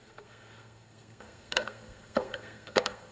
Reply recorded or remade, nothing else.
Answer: remade